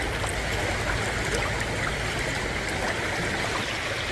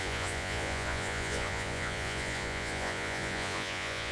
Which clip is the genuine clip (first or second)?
first